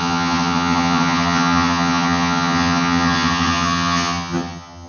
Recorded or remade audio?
remade